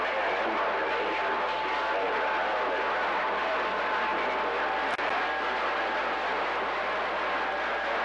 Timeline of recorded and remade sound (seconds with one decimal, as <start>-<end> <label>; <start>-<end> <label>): 0.0-8.0 recorded